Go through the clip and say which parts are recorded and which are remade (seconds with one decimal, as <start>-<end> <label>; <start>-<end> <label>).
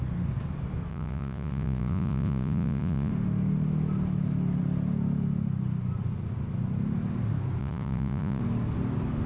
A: 0.0-0.9 recorded; 0.9-3.1 remade; 3.1-7.6 recorded; 7.6-8.4 remade; 8.4-9.3 recorded